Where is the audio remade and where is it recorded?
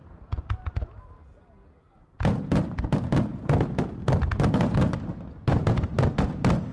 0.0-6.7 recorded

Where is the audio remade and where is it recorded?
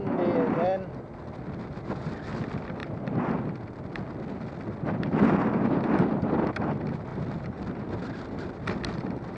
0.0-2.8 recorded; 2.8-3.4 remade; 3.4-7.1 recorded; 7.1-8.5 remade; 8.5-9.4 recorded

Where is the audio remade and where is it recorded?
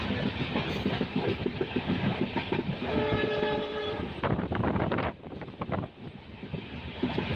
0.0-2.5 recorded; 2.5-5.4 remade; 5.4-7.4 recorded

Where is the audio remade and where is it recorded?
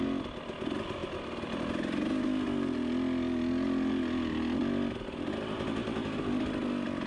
0.0-7.1 recorded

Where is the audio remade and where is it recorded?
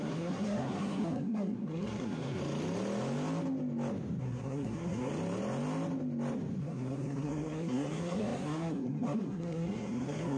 0.0-2.4 remade; 2.4-4.2 recorded; 4.2-5.1 remade; 5.1-6.6 recorded; 6.6-10.4 remade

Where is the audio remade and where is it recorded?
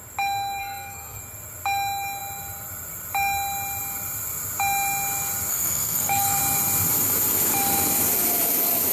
0.0-0.6 recorded; 0.6-1.2 remade; 1.2-5.5 recorded; 5.5-6.4 remade; 6.4-8.9 recorded